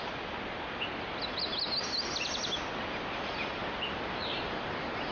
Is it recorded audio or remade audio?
recorded